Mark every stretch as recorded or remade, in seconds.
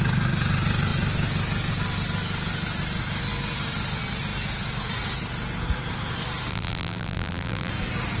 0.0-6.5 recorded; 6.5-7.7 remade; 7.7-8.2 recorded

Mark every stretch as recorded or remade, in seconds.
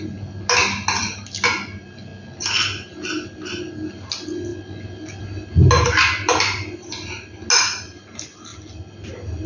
0.0-9.5 recorded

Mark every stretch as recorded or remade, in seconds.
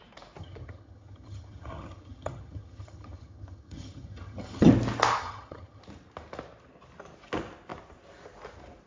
0.0-0.4 recorded; 0.4-4.7 remade; 4.7-5.2 recorded; 5.2-5.8 remade; 5.8-8.9 recorded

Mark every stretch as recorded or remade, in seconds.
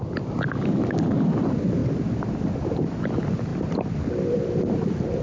0.0-5.2 recorded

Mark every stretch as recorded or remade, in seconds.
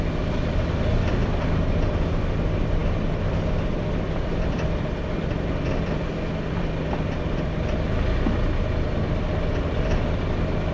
0.0-10.7 recorded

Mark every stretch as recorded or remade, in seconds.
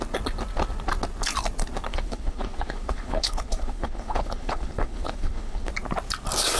0.0-1.9 recorded; 1.9-5.7 remade; 5.7-6.6 recorded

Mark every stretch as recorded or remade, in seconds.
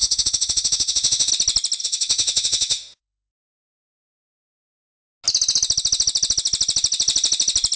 0.0-1.3 remade; 1.3-1.8 recorded; 1.8-3.3 remade; 3.3-7.8 recorded